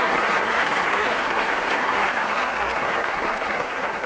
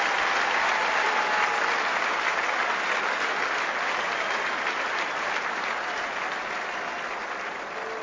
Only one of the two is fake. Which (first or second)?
first